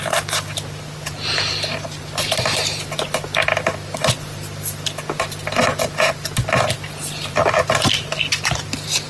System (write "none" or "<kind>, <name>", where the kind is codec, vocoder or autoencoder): none